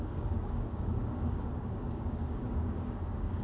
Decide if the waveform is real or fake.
fake